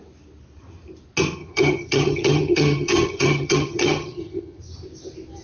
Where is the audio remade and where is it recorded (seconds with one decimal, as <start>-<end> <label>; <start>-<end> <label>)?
0.0-1.4 recorded; 1.4-4.6 remade; 4.6-5.4 recorded